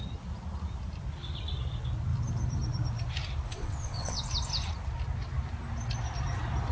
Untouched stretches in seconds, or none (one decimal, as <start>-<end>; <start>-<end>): 0.0-3.5; 4.2-6.7